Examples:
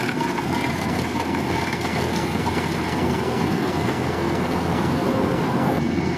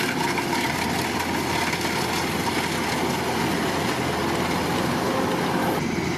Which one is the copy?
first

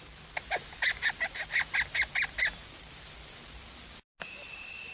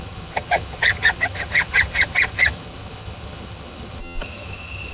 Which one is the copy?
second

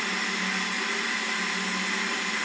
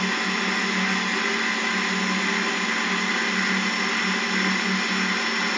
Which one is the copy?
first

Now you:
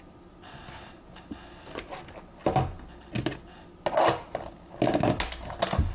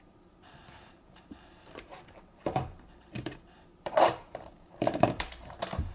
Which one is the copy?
second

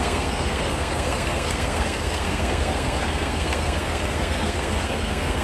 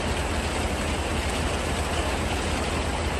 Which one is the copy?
first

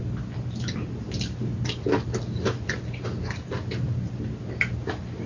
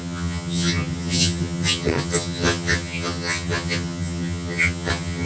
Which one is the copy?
second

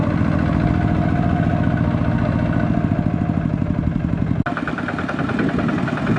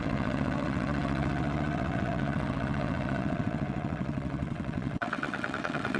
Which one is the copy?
second